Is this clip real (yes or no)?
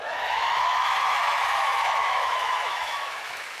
no